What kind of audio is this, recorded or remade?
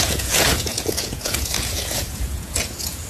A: remade